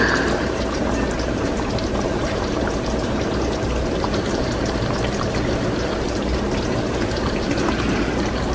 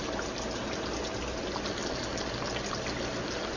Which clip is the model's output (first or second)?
first